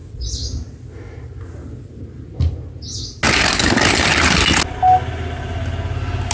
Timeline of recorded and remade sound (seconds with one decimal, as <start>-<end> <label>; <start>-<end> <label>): 0.0-6.3 recorded